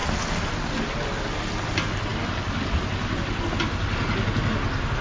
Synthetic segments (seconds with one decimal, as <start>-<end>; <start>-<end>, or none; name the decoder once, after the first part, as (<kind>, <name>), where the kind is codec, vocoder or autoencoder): none